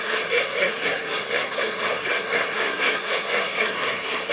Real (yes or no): no